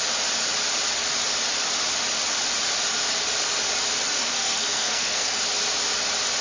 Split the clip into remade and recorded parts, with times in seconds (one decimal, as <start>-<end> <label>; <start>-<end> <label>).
0.0-4.2 recorded; 4.2-5.4 remade; 5.4-6.4 recorded